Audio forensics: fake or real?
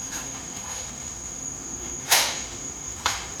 fake